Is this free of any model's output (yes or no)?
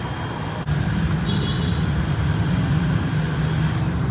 yes